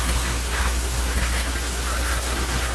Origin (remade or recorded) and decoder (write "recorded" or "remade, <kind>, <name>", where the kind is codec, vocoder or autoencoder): remade, codec, SNAC